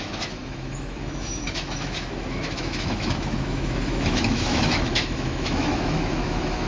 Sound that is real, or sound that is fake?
fake